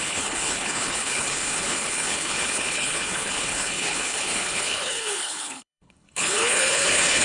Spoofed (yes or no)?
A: yes